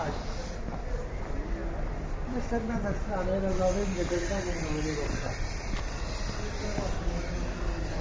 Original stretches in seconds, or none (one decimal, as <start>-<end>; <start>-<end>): 0.0-8.0